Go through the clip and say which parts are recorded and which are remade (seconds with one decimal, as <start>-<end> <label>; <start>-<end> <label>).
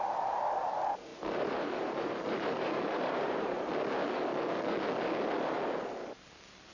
0.0-1.1 recorded; 1.1-3.7 remade; 3.7-6.7 recorded